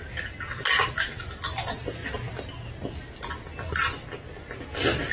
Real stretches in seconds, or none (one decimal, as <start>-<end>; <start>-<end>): 0.0-5.1